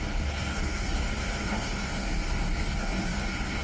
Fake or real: fake